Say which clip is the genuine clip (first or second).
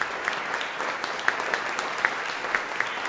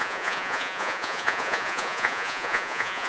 first